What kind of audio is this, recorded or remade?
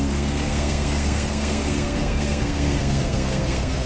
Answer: remade